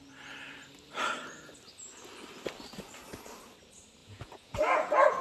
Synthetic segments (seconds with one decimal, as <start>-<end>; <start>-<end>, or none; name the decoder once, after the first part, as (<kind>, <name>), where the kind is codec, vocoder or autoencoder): 4.0-5.2 (vocoder, Vocos)